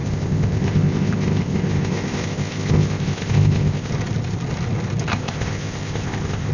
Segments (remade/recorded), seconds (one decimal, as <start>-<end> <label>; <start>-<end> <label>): 0.0-3.9 remade; 3.9-5.1 recorded; 5.1-6.5 remade